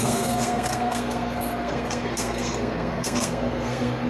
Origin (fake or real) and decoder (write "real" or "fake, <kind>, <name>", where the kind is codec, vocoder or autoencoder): fake, codec, SNAC